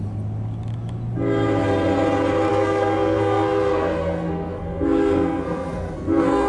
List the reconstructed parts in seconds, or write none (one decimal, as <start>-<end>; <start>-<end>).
2.5-6.5